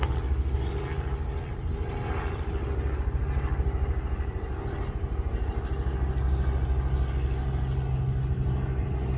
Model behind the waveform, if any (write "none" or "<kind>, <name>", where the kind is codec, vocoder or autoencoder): none